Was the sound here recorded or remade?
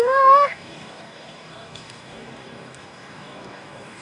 remade